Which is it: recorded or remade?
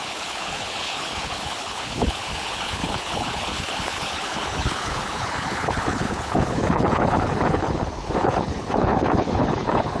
remade